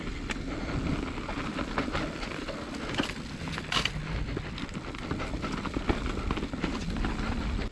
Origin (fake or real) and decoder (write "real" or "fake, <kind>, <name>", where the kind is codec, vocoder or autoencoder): real